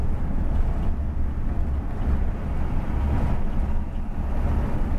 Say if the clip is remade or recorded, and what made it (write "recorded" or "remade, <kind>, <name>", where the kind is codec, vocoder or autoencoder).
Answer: recorded